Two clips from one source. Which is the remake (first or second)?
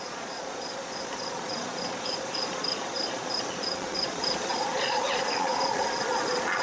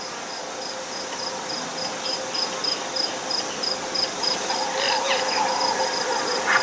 first